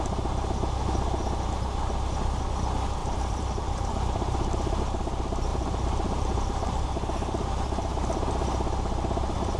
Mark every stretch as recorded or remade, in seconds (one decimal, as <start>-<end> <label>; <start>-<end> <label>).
0.0-3.0 recorded; 3.0-4.8 remade; 4.8-5.5 recorded; 5.5-6.8 remade; 6.8-9.6 recorded